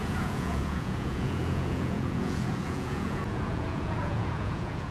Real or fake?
fake